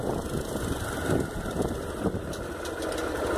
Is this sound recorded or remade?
recorded